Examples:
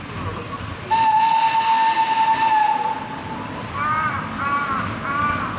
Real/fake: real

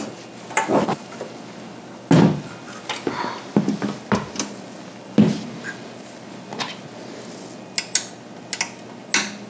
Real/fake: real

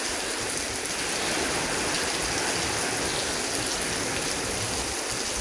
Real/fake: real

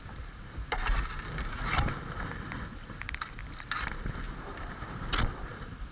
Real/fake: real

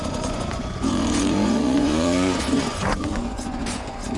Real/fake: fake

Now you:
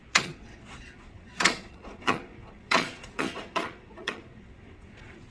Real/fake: fake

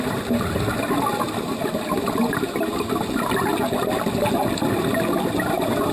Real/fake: real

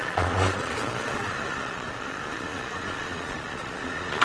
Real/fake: fake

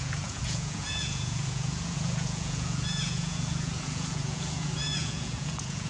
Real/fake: fake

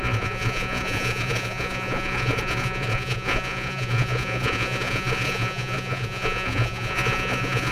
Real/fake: fake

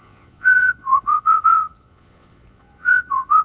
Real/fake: fake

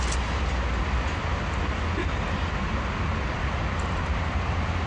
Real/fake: real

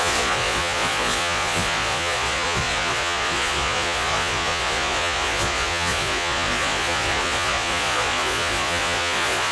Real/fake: fake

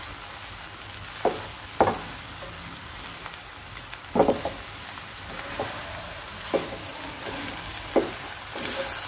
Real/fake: real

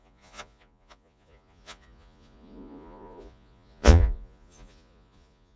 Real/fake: fake